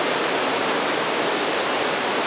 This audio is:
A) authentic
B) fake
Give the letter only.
B